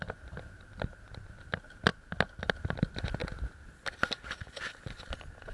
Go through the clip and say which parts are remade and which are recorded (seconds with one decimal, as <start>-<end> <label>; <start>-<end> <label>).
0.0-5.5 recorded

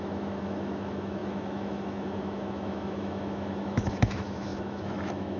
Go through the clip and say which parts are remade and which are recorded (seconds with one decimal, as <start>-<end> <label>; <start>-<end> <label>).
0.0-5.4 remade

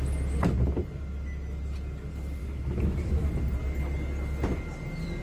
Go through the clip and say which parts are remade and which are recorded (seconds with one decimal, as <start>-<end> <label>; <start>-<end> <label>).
0.0-2.4 recorded; 2.4-3.3 remade; 3.3-5.2 recorded

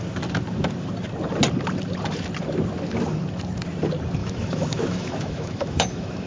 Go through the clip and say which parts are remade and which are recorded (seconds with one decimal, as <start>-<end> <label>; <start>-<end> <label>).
0.0-4.2 recorded; 4.2-6.3 remade

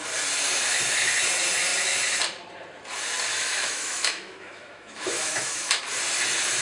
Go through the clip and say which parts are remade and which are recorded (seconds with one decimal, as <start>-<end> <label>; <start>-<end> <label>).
0.0-3.3 recorded; 3.3-5.8 remade; 5.8-6.6 recorded

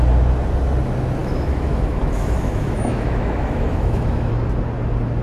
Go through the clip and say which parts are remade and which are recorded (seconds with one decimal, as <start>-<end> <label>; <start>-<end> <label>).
0.0-1.2 recorded; 1.2-4.3 remade; 4.3-5.2 recorded